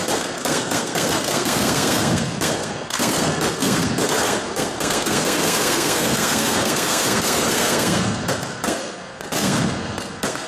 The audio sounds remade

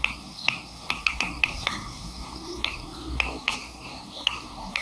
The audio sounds remade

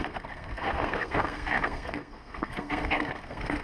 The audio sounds remade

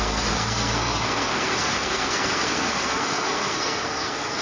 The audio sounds remade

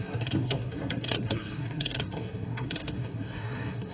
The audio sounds remade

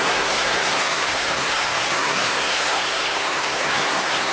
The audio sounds remade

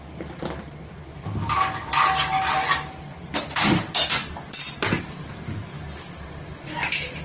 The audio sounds recorded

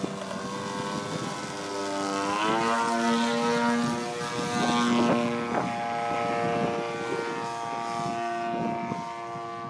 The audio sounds recorded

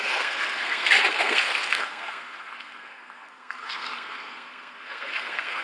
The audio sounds remade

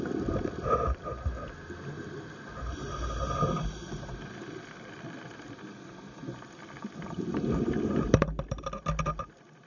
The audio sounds recorded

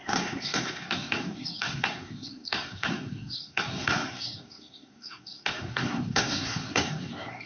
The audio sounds remade